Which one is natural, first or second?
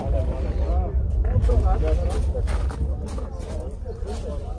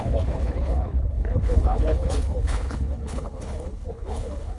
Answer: first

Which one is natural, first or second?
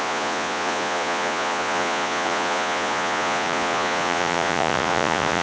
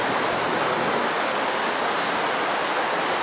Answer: second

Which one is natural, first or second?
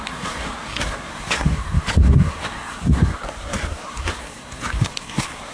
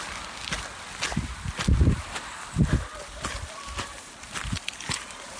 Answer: second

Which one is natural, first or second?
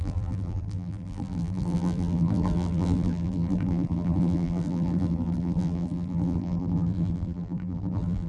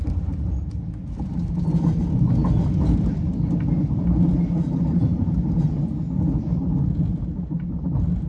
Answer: second